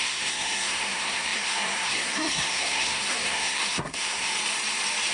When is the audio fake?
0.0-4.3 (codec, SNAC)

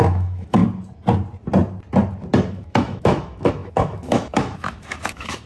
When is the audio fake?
0.0-0.6 (autoencoder, DAC-VAE); 2.5-5.5